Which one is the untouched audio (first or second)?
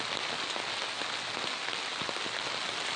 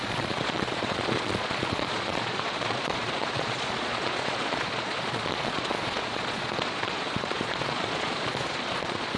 first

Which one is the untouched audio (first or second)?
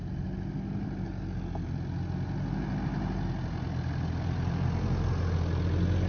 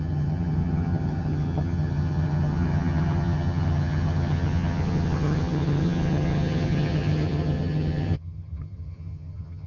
first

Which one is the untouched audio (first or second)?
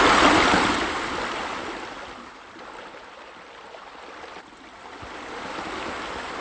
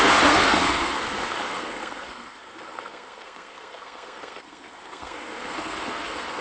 first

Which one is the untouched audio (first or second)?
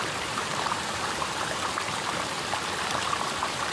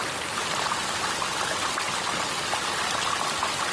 second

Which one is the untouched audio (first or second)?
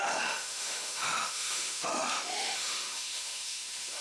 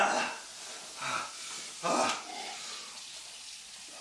second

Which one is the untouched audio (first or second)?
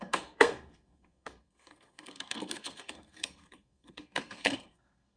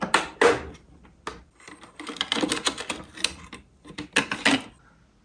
second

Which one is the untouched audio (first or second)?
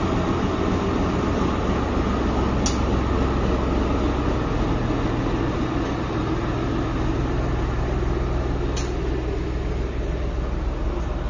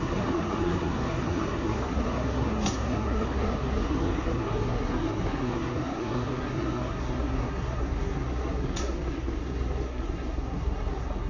first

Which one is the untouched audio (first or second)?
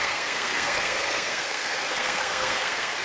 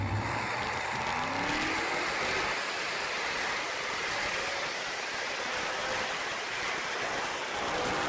second